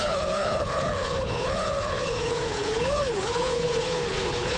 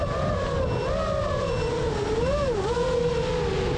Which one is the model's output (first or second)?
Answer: first